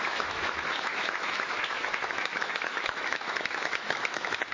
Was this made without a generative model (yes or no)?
no